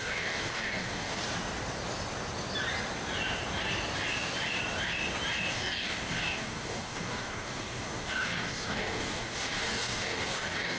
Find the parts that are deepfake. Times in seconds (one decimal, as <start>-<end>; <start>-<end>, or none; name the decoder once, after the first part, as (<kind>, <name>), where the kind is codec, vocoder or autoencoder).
0.0-1.2 (codec, DAC); 5.5-10.8